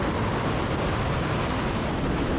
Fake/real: real